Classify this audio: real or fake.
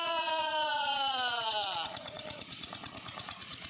fake